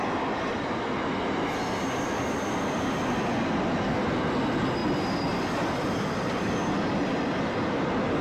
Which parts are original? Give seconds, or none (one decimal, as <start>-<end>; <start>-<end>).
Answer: 0.0-3.3; 4.3-8.2